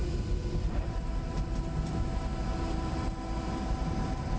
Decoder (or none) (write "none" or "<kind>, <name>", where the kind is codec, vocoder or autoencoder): vocoder, BigVGAN v2